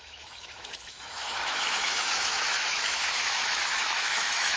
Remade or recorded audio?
remade